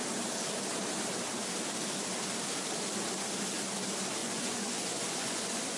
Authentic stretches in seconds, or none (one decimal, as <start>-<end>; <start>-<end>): 0.0-4.2